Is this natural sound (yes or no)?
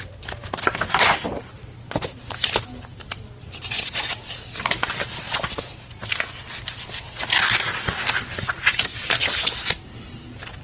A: yes